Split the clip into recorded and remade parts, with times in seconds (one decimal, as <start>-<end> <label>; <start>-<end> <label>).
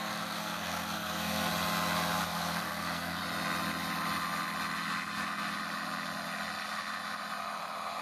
0.0-1.5 remade; 1.5-2.2 recorded; 2.2-3.2 remade; 3.2-8.0 recorded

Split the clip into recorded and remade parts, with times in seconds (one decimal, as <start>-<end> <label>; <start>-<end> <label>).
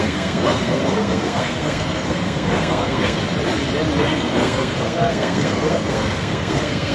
0.0-3.2 remade; 3.2-4.0 recorded; 4.0-6.9 remade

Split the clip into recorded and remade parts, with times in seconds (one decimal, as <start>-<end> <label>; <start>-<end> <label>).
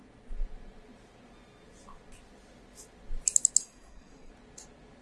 0.0-3.6 recorded; 3.6-4.3 remade; 4.3-5.0 recorded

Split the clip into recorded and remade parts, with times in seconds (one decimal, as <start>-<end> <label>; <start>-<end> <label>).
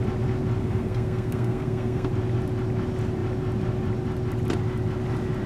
0.0-0.6 recorded; 0.6-2.1 remade; 2.1-5.5 recorded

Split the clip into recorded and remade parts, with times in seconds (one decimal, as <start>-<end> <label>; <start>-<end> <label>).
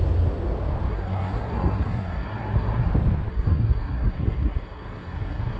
0.0-0.9 recorded; 0.9-2.9 remade; 2.9-3.3 recorded; 3.3-5.6 remade